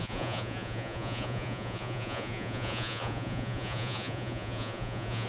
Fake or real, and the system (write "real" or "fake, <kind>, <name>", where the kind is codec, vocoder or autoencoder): fake, vocoder, Vocos